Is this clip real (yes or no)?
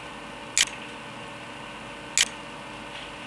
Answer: yes